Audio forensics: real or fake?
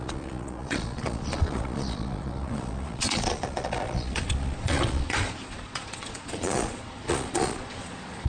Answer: fake